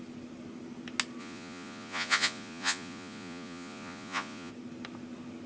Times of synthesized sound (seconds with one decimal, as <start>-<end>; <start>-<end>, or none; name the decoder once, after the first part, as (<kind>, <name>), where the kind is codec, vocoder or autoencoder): 1.2-4.5 (vocoder, Vocos)